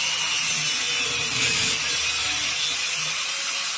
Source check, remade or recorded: recorded